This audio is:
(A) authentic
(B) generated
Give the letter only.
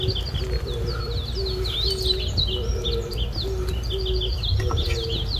A